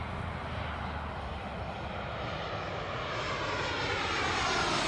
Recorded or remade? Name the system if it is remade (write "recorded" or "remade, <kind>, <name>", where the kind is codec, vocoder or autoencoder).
recorded